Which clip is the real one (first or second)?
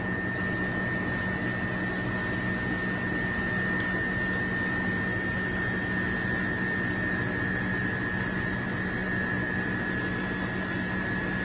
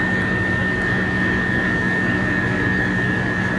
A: first